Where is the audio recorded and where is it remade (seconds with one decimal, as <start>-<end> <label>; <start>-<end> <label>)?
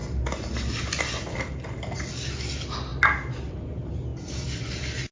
0.0-5.1 recorded